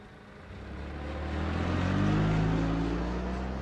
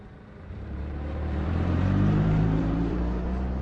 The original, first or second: first